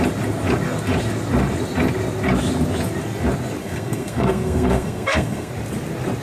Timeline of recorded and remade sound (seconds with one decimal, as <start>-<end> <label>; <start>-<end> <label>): 0.0-3.6 recorded; 3.6-5.5 remade; 5.5-6.2 recorded